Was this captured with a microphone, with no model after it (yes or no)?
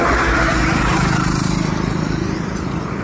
yes